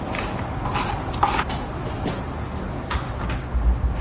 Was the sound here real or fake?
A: real